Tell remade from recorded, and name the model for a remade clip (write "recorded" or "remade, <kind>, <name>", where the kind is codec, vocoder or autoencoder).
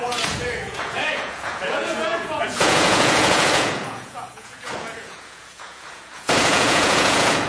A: remade, vocoder, Vocos